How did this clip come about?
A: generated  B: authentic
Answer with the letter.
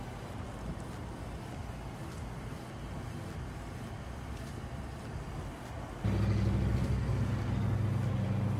B